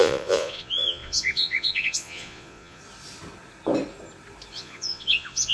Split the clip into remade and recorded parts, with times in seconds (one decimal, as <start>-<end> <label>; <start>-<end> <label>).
0.0-2.8 remade; 2.8-4.5 recorded; 4.5-5.5 remade